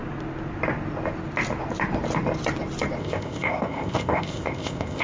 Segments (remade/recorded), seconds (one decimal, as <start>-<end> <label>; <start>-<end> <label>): 0.0-3.0 recorded; 3.0-5.0 remade